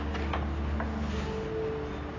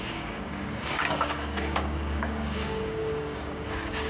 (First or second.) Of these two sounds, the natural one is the first